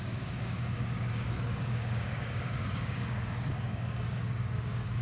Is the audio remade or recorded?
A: remade